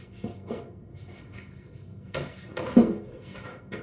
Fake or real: fake